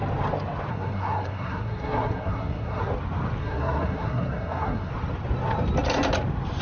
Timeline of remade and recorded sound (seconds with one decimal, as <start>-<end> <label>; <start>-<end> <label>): 0.0-0.7 recorded; 0.7-2.8 remade; 2.8-3.4 recorded; 3.4-4.9 remade; 4.9-6.6 recorded